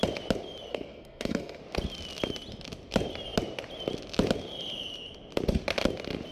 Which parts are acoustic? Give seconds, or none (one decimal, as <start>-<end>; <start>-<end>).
0.0-0.7; 1.6-6.3